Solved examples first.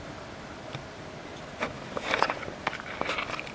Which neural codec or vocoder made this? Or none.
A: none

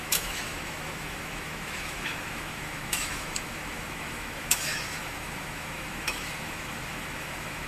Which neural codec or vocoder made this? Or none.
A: autoencoder, DAC-VAE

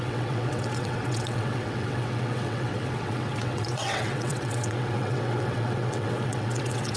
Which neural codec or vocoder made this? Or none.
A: vocoder, WaveNeXt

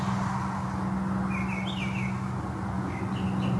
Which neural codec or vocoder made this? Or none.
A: none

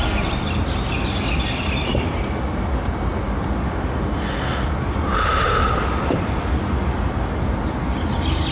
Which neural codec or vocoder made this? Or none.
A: none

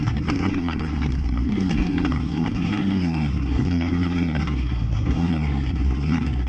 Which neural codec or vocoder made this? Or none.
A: codec, SNAC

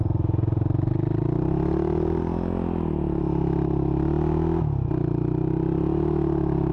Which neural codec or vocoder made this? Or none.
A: none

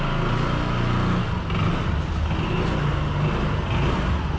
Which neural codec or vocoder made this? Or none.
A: none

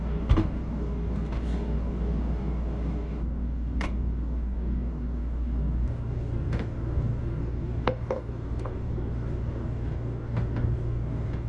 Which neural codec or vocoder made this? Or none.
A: codec, DAC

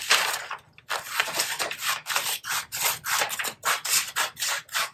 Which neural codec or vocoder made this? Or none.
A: vocoder, BigVGAN v2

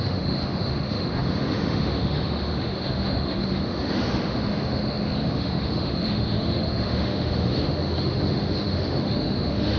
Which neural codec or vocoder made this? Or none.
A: autoencoder, DAC-VAE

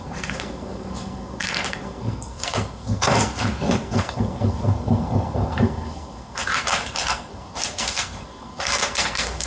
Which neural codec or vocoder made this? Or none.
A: codec, SNAC